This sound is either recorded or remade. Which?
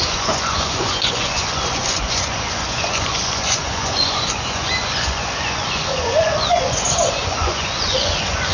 remade